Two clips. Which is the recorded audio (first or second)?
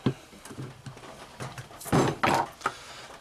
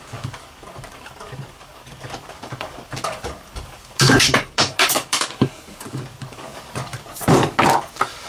first